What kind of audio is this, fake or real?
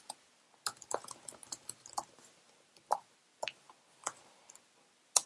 real